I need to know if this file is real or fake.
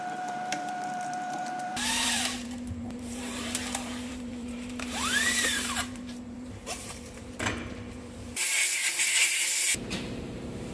fake